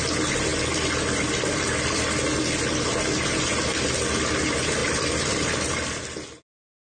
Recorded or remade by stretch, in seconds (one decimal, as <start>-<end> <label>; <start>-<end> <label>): 0.0-4.8 recorded; 4.8-6.0 remade; 6.0-6.9 recorded